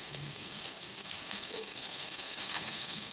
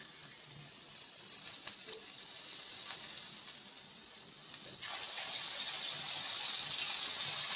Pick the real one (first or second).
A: second